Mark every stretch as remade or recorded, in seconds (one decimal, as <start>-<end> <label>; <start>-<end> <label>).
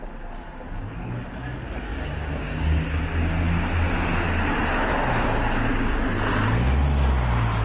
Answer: 0.0-1.9 recorded; 1.9-3.0 remade; 3.0-7.6 recorded